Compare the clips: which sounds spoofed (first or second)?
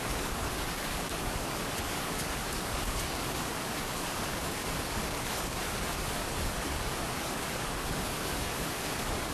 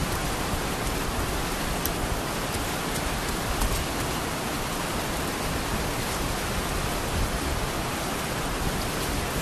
first